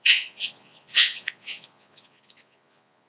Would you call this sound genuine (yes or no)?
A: no